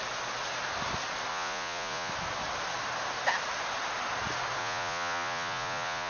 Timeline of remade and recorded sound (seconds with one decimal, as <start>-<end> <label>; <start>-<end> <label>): 0.0-1.3 recorded; 1.3-2.1 remade; 2.1-4.6 recorded; 4.6-6.1 remade